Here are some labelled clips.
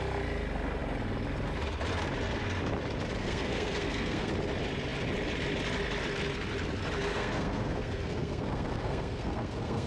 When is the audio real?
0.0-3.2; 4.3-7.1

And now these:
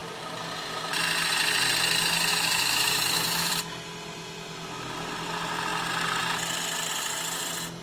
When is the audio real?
0.0-2.3; 3.5-7.8